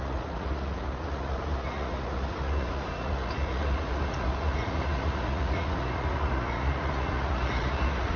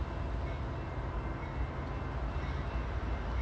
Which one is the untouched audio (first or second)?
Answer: second